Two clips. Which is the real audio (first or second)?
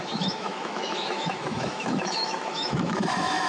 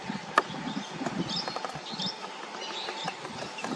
second